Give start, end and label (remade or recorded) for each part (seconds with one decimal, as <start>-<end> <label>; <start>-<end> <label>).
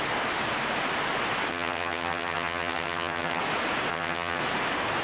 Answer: 0.0-1.5 recorded; 1.5-3.4 remade; 3.4-3.9 recorded; 3.9-4.4 remade; 4.4-5.0 recorded